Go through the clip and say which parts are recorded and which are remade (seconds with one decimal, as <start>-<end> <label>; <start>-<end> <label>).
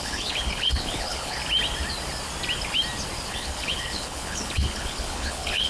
0.0-1.4 remade; 1.4-3.3 recorded; 3.3-5.7 remade